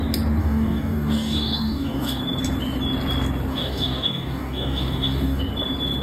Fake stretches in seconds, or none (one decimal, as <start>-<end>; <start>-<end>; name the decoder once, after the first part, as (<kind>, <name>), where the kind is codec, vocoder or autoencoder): 0.4-2.2 (codec, DAC); 3.5-5.4